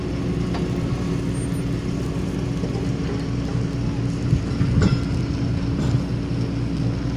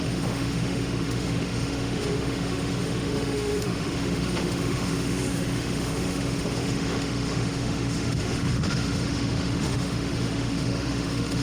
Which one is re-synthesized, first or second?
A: second